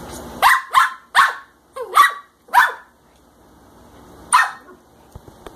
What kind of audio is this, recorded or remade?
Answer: recorded